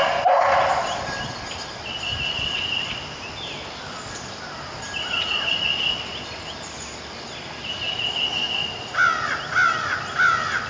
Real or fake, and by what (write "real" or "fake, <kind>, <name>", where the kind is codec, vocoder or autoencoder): real